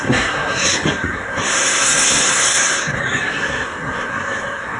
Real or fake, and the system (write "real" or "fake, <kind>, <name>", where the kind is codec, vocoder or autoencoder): fake, codec, SNAC